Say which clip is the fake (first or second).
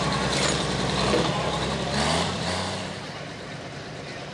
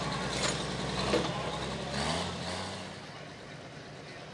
first